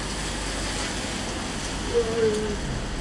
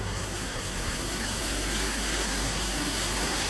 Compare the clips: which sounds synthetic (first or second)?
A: second